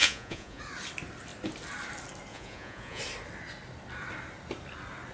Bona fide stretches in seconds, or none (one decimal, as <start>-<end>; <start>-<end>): 0.6-2.3; 3.0-5.1